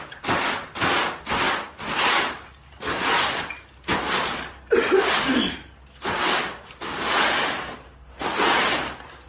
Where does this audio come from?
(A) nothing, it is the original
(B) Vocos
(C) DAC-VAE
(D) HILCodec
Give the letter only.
A